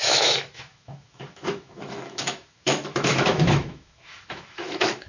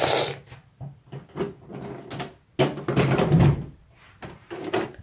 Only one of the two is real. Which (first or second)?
second